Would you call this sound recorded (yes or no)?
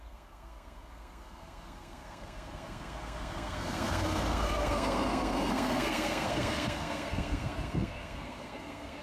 no